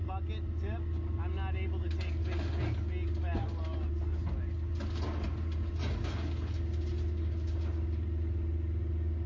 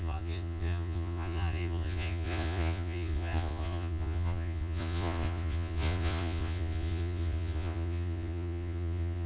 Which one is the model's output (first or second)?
second